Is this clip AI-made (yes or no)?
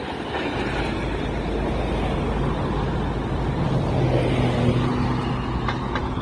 no